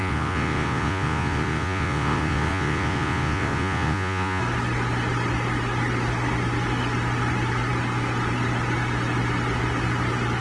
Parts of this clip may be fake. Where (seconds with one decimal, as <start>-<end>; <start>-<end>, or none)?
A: 0.0-4.4